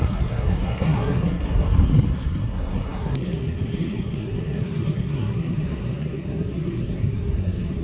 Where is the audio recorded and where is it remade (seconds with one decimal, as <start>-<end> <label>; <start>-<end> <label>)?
0.0-7.8 remade